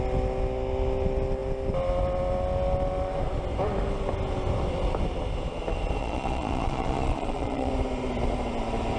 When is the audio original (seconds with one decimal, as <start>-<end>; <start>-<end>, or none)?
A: 0.0-6.0; 7.7-9.0